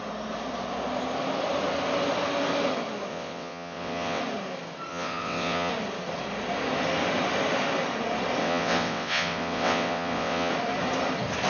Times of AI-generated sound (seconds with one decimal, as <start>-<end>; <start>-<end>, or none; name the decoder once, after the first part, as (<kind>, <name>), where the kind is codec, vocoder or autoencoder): 3.1-4.2 (vocoder, WaveNeXt); 4.9-5.7; 8.4-10.5